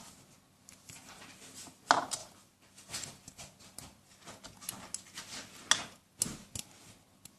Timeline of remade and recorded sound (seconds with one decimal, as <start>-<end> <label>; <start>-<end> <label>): 0.0-7.4 recorded